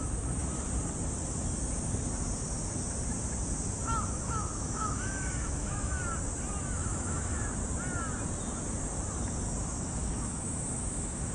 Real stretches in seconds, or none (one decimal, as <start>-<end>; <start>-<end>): 0.4-4.1; 6.0-6.6; 7.6-9.6